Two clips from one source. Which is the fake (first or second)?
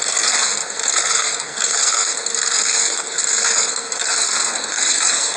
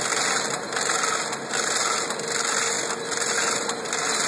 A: first